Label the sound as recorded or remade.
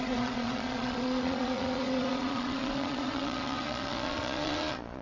remade